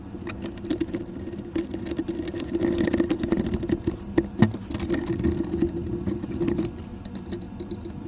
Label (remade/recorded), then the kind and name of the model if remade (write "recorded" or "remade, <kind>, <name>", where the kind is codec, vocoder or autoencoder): recorded